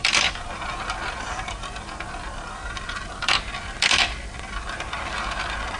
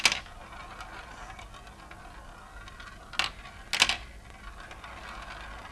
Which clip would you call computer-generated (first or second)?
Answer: first